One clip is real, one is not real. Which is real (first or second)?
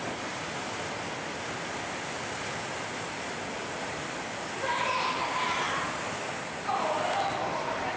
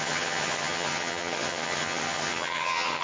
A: first